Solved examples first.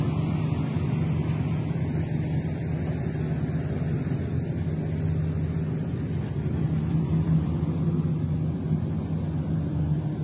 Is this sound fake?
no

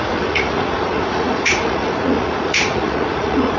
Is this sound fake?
yes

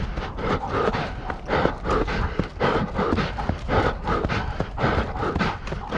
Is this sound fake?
no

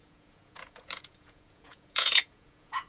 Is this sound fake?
yes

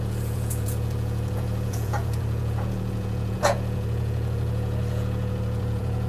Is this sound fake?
yes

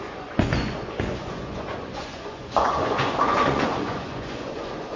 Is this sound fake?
yes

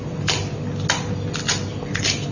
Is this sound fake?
no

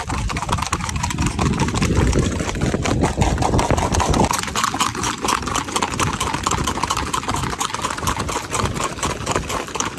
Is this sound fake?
no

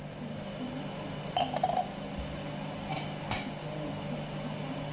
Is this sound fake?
no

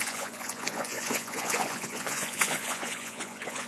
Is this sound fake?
yes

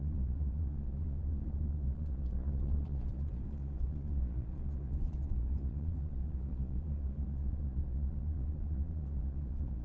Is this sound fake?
yes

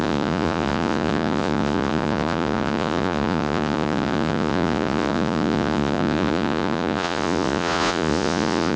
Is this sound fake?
yes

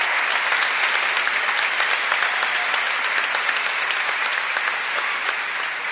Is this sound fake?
no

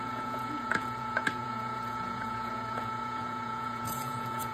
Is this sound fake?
yes